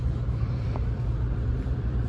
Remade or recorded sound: remade